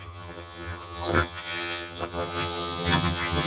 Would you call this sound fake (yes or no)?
yes